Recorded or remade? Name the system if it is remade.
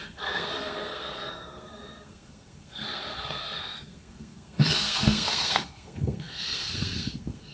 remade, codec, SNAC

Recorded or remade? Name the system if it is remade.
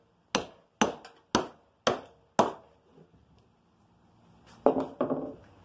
recorded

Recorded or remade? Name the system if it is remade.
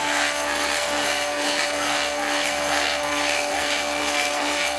remade, codec, SNAC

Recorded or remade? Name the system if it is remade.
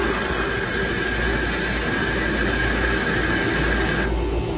recorded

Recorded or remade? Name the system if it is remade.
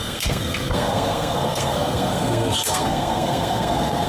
remade, codec, SNAC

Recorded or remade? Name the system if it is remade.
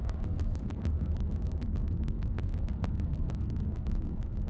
remade, codec, SNAC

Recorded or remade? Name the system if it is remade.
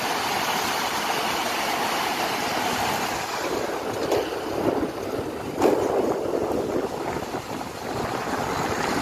recorded